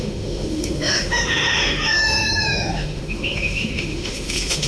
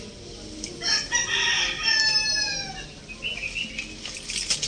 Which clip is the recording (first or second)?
second